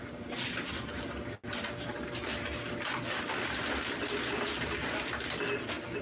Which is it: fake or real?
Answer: real